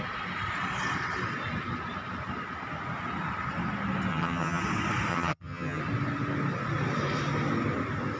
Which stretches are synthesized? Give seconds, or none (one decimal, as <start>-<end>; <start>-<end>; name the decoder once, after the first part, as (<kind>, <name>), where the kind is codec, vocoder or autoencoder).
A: 4.1-4.6 (vocoder, HiFi-GAN); 5.1-5.8